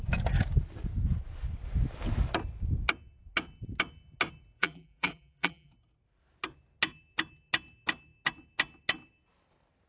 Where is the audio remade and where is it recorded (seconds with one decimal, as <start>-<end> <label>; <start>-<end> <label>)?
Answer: 0.0-4.6 recorded; 4.6-5.7 remade; 5.7-9.9 recorded